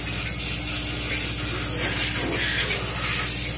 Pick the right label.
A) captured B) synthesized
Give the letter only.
A